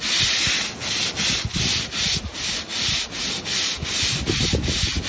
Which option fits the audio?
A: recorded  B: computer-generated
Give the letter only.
A